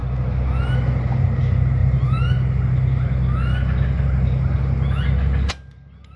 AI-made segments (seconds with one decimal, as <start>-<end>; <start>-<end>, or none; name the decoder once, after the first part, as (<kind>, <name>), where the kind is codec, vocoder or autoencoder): none